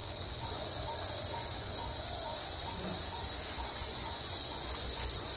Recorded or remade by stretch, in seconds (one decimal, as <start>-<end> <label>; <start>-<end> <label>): 0.0-5.4 remade